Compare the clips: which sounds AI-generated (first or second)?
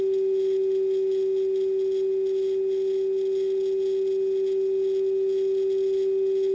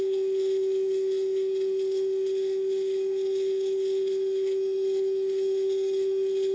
second